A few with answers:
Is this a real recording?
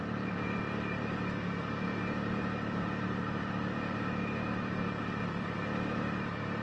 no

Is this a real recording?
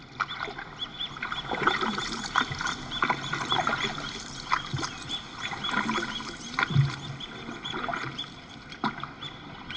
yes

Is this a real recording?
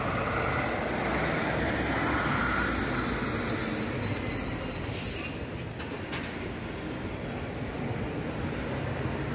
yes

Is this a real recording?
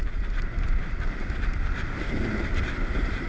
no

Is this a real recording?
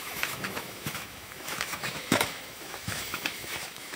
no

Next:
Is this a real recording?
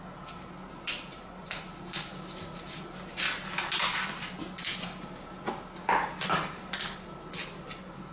yes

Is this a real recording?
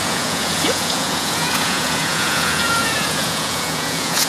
no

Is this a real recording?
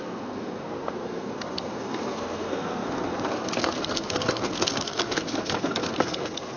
no